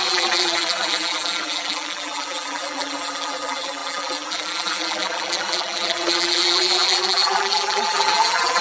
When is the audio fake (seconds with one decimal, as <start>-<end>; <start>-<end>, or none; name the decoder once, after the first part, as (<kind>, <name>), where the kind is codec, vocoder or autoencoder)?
0.0-8.6 (vocoder, BigVGAN v2)